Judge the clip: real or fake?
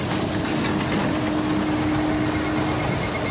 real